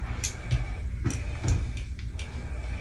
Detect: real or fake real